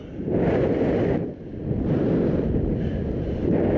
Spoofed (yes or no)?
no